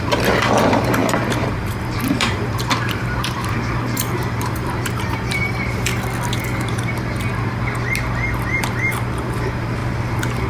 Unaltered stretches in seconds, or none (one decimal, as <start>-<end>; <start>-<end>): 5.9-9.3; 9.8-10.5